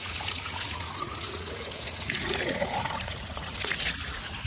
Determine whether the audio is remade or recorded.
remade